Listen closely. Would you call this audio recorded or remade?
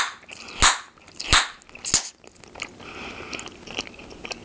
recorded